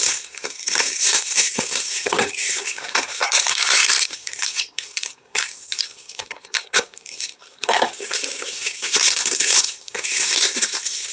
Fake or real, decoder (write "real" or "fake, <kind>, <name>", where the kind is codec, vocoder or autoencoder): fake, codec, SNAC